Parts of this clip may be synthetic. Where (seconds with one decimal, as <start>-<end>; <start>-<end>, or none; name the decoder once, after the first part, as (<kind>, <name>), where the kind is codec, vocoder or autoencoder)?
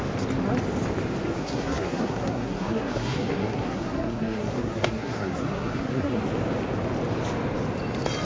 1.4-6.2 (codec, SNAC)